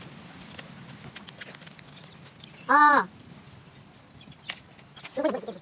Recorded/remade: recorded